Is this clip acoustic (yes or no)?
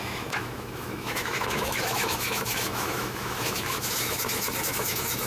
no